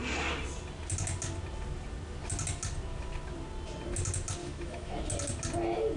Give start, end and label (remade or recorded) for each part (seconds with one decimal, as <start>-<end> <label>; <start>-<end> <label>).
0.0-4.4 recorded; 4.4-4.9 remade; 4.9-6.0 recorded

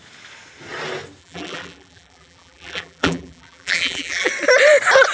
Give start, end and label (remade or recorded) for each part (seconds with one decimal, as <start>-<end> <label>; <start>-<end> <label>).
0.0-1.2 recorded; 1.2-4.3 remade; 4.3-5.1 recorded

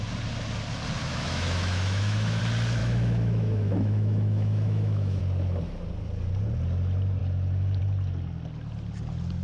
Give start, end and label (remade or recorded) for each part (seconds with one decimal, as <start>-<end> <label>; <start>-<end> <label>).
0.0-1.0 recorded; 1.0-2.4 remade; 2.4-2.8 recorded; 2.8-5.2 remade; 5.2-9.4 recorded

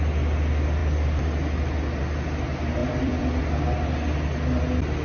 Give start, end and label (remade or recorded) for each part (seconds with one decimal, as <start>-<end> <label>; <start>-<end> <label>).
0.0-2.8 recorded; 2.8-3.4 remade; 3.4-5.0 recorded

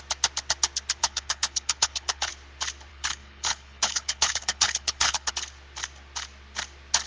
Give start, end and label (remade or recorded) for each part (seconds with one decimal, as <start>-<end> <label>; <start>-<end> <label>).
0.0-1.0 recorded; 1.0-2.3 remade; 2.3-2.9 recorded; 2.9-5.3 remade; 5.3-7.1 recorded

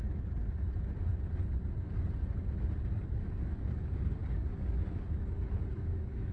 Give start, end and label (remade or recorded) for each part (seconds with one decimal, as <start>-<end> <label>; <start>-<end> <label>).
0.0-0.4 remade; 0.4-2.9 recorded; 2.9-6.3 remade

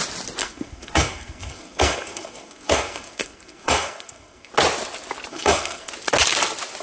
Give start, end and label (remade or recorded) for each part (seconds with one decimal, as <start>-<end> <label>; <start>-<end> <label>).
0.0-0.4 recorded; 0.4-4.5 remade; 4.5-5.3 recorded; 5.3-5.9 remade; 5.9-6.8 recorded